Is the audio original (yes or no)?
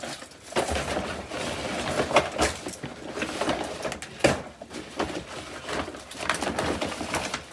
yes